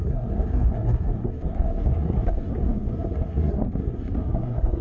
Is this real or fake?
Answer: fake